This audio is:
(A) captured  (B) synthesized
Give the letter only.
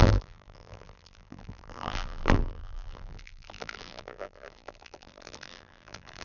B